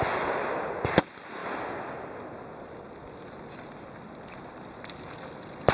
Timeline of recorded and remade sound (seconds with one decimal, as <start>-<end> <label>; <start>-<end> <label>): 0.0-5.7 recorded